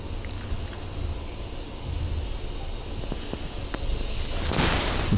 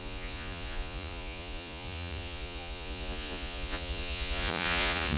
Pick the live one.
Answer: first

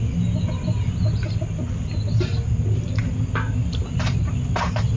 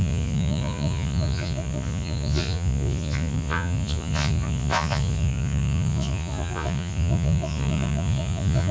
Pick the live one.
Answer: first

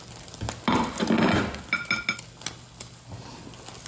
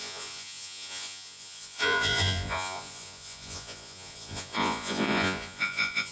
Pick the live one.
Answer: first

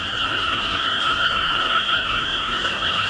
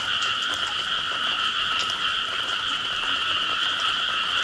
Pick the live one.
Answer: second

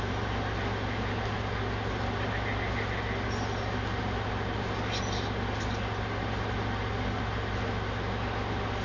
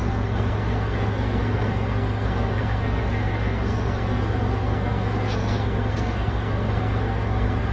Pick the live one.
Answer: first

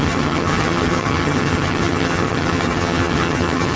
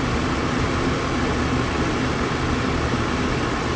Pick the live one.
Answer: second